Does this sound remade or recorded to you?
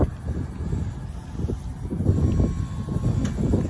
recorded